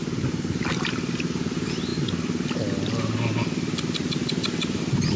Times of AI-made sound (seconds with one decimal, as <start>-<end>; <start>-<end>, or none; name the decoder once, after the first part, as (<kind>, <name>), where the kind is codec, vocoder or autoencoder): none